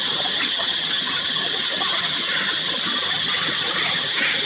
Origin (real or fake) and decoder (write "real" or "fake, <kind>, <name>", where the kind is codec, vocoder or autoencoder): fake, vocoder, HiFi-GAN